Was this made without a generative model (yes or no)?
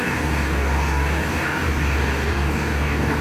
no